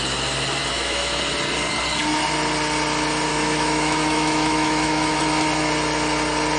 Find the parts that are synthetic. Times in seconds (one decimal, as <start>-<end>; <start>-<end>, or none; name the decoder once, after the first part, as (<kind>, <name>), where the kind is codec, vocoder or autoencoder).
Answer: 0.7-1.2 (autoencoder, DAC-VAE); 3.3-5.2